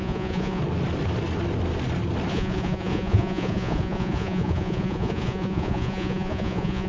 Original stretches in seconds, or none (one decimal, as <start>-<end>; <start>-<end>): 0.6-2.3